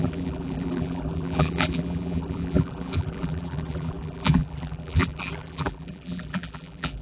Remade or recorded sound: remade